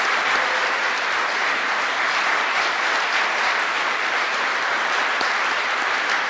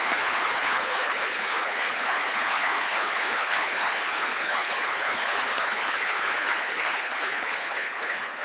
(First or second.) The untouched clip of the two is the first